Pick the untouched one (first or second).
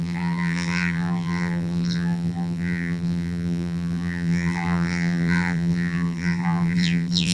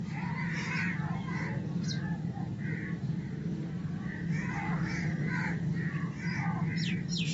second